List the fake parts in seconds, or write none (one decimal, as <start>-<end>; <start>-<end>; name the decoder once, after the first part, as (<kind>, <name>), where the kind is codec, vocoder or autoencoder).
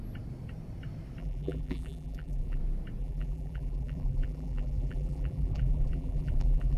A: 1.2-2.6 (vocoder, BigVGAN v2); 3.0-6.8